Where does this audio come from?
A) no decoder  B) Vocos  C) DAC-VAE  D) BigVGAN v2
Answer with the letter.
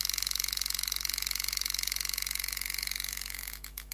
C